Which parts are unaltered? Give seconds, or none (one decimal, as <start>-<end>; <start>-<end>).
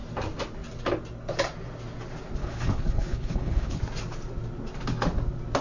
0.0-2.4; 3.8-5.6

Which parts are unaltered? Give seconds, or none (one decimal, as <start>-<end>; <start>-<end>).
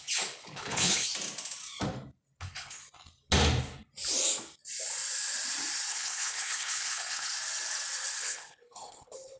1.1-2.4; 2.8-5.9; 7.3-8.2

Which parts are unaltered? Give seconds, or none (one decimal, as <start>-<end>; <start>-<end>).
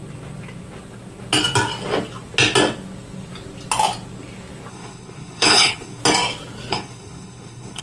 0.0-4.7; 6.0-6.7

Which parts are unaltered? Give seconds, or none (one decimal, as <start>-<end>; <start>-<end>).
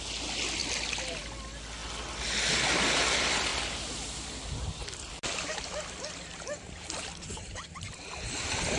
0.0-8.8